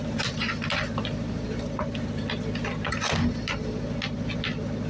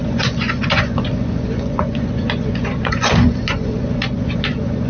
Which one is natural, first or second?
first